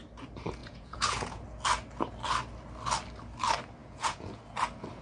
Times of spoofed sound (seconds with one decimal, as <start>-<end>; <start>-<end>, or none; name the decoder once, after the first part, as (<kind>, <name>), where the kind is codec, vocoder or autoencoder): 0.6-1.4 (vocoder, Vocos); 3.8-4.4